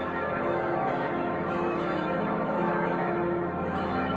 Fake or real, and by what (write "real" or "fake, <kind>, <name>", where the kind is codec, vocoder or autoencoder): fake, autoencoder, DAC-VAE